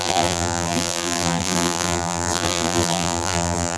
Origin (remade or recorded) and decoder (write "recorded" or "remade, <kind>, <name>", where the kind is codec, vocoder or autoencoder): remade, vocoder, BigVGAN v2